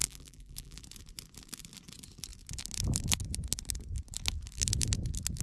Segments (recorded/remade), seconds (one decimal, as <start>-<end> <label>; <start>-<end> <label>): 0.0-0.8 remade; 0.8-5.4 recorded